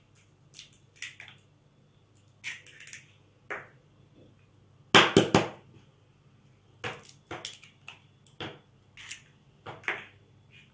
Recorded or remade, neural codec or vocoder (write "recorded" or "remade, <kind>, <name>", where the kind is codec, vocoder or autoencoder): recorded